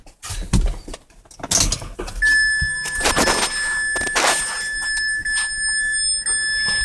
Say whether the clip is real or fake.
real